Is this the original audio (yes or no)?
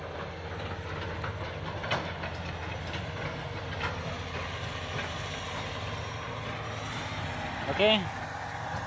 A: yes